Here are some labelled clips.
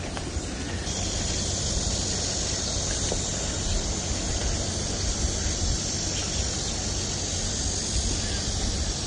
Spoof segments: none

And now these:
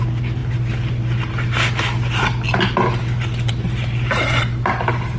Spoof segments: none

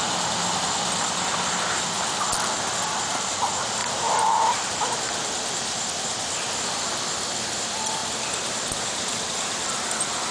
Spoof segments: 3.8-4.7 (vocoder, BigVGAN v2); 8.0-9.9